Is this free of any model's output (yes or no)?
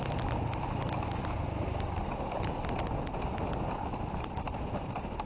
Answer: yes